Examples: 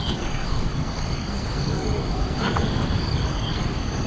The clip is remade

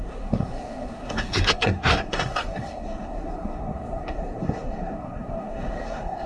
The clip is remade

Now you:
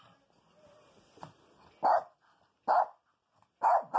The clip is recorded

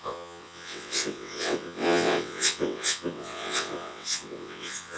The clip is remade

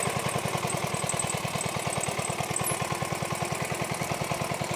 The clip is recorded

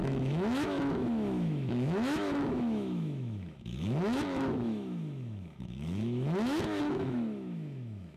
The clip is remade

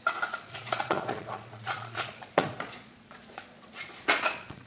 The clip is remade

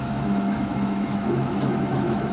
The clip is remade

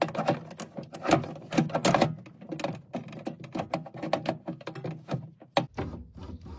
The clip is recorded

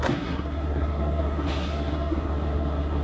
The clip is remade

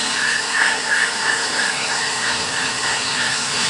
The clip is remade